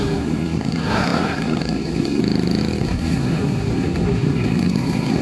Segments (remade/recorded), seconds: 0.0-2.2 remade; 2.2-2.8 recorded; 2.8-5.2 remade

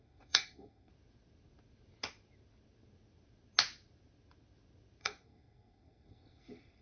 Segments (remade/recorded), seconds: 0.0-0.9 remade; 0.9-5.0 recorded; 5.0-6.8 remade